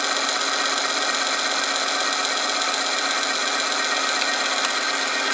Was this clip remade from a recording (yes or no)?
no